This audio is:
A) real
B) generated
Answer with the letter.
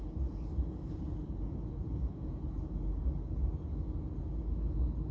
A